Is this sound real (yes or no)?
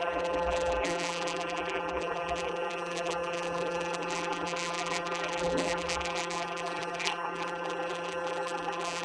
no